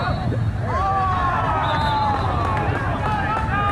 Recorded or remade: recorded